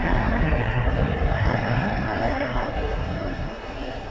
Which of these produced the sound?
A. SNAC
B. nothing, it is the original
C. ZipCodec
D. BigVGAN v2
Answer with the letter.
A